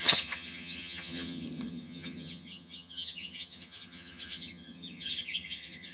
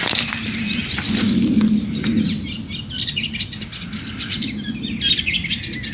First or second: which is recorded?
second